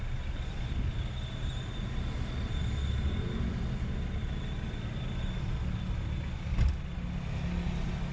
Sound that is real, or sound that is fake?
real